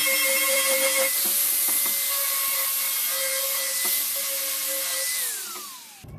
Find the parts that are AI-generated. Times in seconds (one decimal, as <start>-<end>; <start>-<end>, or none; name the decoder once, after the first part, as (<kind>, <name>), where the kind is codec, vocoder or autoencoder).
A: 0.0-2.1 (vocoder, BigVGAN v2)